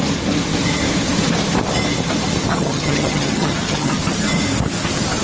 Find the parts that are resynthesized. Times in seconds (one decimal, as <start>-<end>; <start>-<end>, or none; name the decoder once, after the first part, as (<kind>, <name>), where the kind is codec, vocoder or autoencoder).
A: 2.5-4.0 (vocoder, HiFi-GAN)